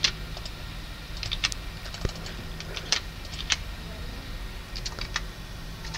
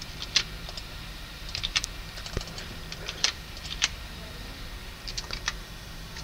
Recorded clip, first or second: first